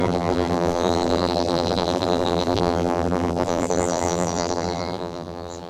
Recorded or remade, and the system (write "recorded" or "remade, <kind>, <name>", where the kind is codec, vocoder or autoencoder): remade, vocoder, BigVGAN v2